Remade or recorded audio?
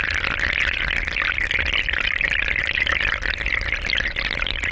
recorded